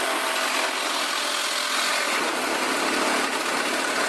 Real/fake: real